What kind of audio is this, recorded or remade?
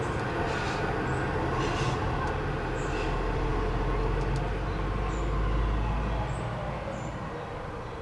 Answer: recorded